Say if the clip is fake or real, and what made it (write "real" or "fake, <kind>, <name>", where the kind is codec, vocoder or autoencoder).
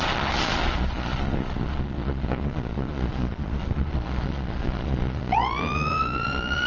fake, vocoder, Vocos